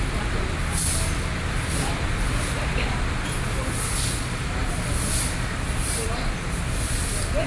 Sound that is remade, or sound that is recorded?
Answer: recorded